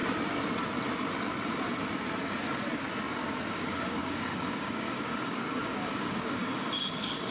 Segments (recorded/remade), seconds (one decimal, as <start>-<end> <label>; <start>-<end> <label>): 0.0-3.5 recorded; 3.5-7.3 remade